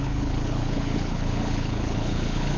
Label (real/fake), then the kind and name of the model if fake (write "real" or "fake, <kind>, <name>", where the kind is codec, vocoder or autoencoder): fake, codec, HILCodec